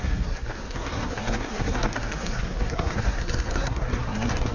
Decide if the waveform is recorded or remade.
remade